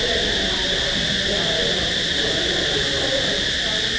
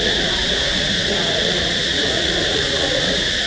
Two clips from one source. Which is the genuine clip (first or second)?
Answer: first